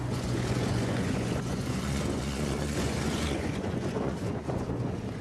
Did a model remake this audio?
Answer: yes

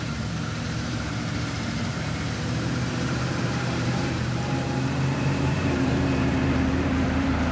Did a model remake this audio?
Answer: yes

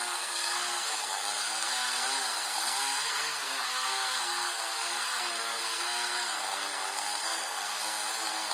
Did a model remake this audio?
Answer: yes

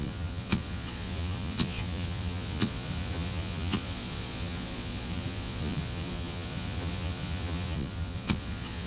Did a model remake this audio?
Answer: yes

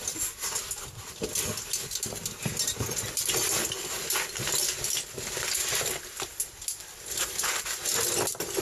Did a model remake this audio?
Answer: no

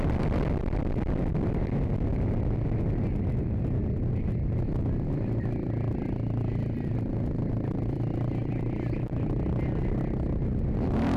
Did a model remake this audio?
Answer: no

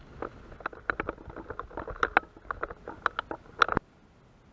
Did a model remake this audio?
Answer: no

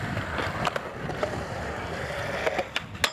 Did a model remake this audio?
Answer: no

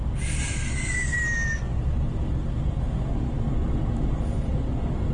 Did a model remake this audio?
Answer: no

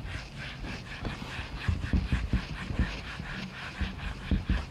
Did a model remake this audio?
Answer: no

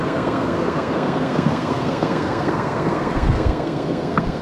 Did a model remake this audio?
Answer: yes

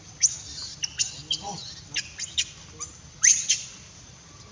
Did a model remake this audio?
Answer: no